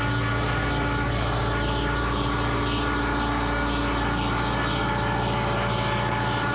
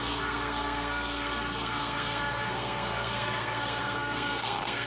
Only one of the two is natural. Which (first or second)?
first